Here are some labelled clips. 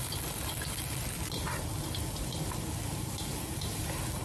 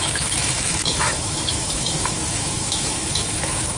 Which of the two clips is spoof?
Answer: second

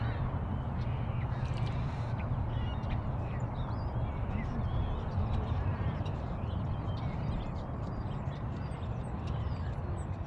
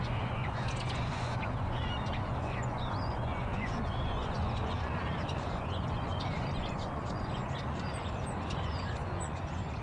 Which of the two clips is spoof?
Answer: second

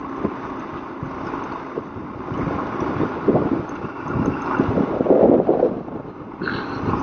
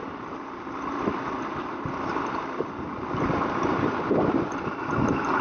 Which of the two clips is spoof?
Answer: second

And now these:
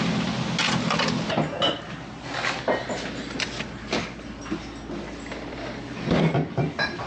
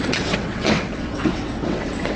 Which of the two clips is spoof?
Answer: second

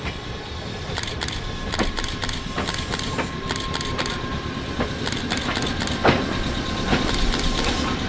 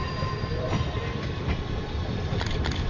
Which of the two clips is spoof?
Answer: second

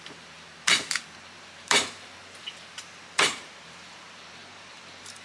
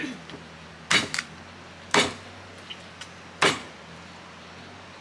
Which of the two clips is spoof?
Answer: first